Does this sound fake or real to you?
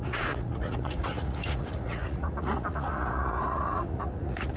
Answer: fake